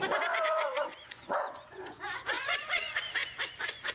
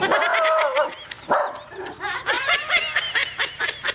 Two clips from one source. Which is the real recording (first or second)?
second